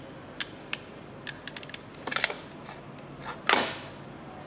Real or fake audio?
real